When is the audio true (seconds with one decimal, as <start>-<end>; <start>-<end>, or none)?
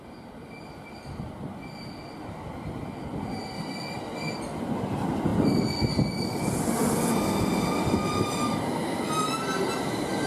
0.0-10.3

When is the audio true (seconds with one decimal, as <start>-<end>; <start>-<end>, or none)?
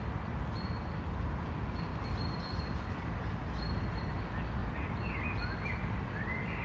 0.0-6.6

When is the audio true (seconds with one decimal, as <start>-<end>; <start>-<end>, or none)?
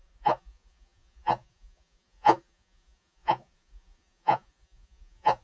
none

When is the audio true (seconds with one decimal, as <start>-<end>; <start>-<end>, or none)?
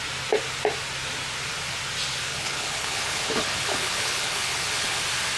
0.0-2.3; 5.0-5.4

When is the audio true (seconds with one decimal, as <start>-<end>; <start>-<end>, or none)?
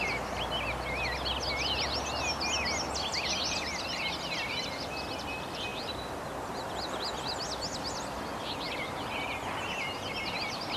0.0-10.8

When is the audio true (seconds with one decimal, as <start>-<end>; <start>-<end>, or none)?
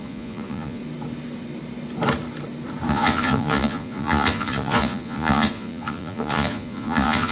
0.8-2.9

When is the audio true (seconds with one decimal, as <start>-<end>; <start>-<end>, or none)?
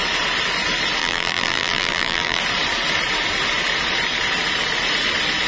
0.0-1.0; 2.4-5.5